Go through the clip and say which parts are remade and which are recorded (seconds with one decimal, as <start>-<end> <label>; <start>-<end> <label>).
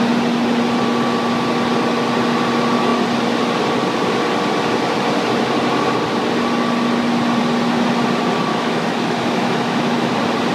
0.0-8.5 recorded; 8.5-10.1 remade; 10.1-10.5 recorded